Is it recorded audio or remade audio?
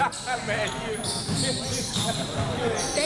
recorded